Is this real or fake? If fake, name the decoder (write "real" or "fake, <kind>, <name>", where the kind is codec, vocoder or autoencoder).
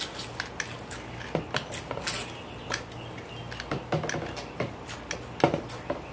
real